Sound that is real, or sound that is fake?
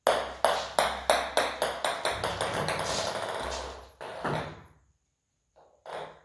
real